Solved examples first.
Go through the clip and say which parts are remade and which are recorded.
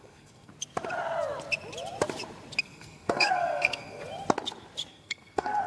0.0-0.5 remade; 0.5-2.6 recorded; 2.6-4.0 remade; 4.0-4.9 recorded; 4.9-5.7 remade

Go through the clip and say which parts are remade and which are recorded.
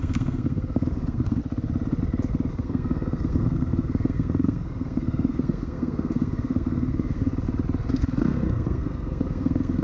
0.0-1.4 remade; 1.4-2.5 recorded; 2.5-7.3 remade; 7.3-7.9 recorded; 7.9-9.8 remade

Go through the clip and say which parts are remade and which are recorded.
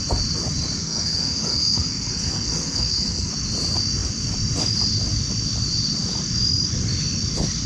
0.0-0.8 recorded; 0.8-3.3 remade; 3.3-7.7 recorded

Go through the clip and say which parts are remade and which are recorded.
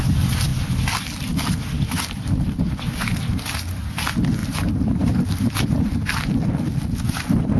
0.0-7.6 recorded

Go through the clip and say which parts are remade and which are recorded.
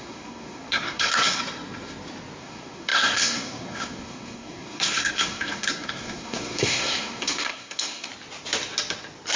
0.0-1.4 remade; 1.4-2.4 recorded; 2.4-8.1 remade; 8.1-9.4 recorded